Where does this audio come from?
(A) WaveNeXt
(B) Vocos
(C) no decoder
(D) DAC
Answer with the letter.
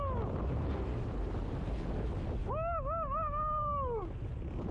C